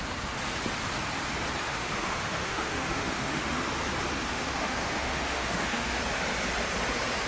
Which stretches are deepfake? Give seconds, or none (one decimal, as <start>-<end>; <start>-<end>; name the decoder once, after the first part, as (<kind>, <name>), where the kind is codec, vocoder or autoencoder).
1.7-3.6 (autoencoder, DAC-VAE); 4.3-6.0